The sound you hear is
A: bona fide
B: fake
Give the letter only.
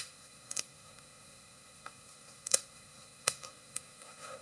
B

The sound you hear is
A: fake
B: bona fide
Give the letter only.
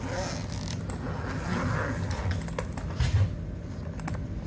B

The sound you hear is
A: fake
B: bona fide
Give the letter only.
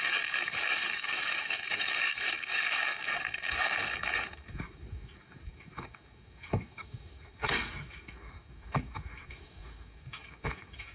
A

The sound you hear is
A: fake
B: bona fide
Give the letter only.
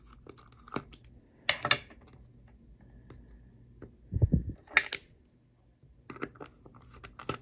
B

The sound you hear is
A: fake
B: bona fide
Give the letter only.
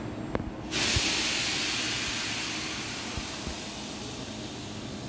B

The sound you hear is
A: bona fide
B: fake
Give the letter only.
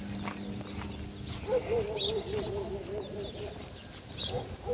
A